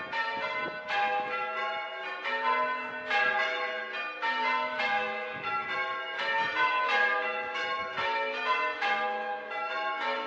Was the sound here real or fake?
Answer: real